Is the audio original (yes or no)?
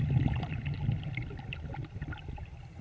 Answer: yes